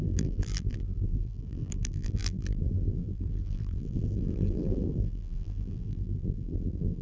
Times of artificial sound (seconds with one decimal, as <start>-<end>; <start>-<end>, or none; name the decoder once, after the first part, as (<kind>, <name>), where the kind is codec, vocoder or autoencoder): 0.0-7.0 (vocoder, BigVGAN v2)